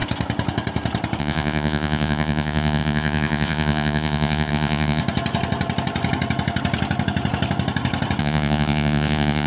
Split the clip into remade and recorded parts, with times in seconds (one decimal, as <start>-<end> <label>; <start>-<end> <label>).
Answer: 0.0-1.2 recorded; 1.2-5.0 remade; 5.0-8.2 recorded; 8.2-9.5 remade